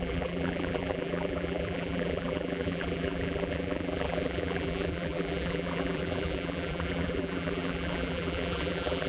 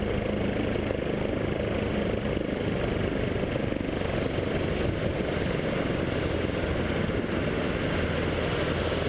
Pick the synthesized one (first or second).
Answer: first